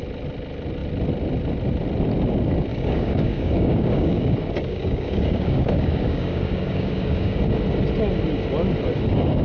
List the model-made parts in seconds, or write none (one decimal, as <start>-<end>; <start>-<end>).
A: 2.7-7.4